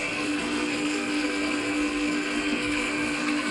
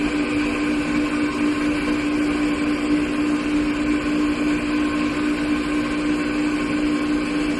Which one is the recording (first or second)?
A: second